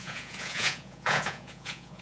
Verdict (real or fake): fake